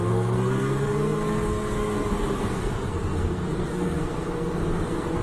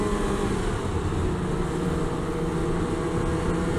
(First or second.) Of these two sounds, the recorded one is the second